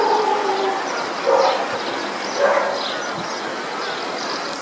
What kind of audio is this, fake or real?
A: real